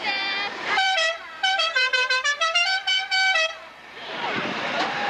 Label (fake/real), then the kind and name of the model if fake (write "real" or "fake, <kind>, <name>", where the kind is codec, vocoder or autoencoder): fake, vocoder, BigVGAN v2